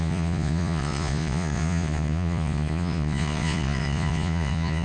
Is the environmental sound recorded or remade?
remade